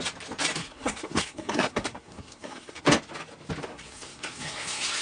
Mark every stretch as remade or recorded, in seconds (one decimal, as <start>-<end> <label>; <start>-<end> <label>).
0.0-0.6 recorded; 0.6-2.8 remade; 2.8-3.7 recorded; 3.7-5.0 remade